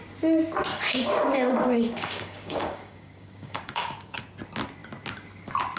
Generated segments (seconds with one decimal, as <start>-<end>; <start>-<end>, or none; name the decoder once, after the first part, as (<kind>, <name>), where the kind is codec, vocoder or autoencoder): 0.7-4.2 (codec, DAC)